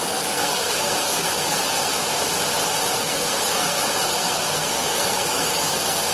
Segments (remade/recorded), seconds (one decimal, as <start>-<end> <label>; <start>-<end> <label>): 0.0-1.9 remade; 1.9-2.9 recorded; 2.9-6.1 remade